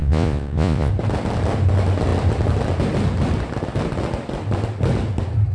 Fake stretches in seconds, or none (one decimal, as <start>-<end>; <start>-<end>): 0.0-0.9